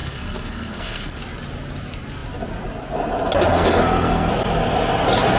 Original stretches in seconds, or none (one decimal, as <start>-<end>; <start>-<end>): 1.2-3.5; 4.3-5.4